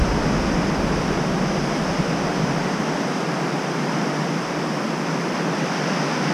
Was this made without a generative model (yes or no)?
yes